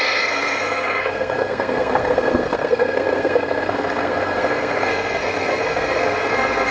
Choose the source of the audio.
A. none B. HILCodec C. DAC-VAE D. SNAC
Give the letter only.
D